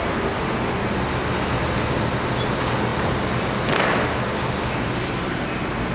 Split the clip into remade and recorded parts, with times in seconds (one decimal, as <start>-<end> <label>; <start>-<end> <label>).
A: 0.0-5.9 recorded